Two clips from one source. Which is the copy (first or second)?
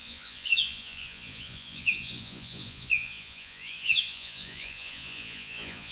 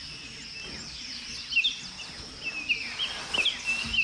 first